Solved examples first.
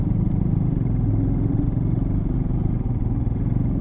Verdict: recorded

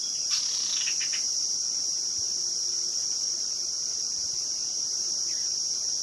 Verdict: recorded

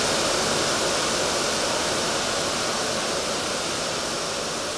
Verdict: recorded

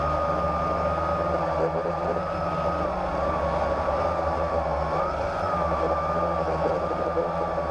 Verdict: recorded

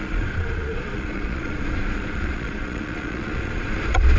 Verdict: remade